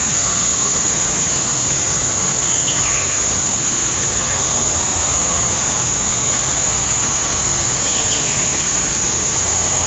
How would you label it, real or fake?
fake